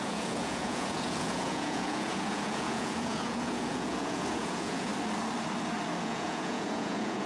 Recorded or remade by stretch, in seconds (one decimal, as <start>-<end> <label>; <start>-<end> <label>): 0.0-4.9 remade; 4.9-6.0 recorded; 6.0-7.3 remade